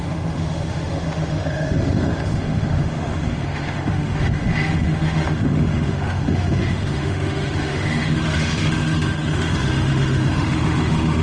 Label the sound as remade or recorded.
remade